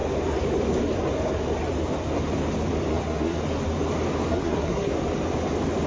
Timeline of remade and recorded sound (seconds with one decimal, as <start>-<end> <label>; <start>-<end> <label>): 0.0-2.9 recorded; 2.9-3.4 remade; 3.4-4.3 recorded; 4.3-4.9 remade; 4.9-5.9 recorded